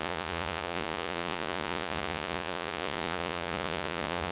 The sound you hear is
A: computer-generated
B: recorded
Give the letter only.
A